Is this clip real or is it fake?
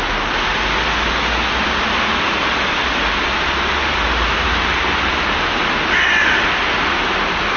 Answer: real